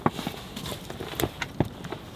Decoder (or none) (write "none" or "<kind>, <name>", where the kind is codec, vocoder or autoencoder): none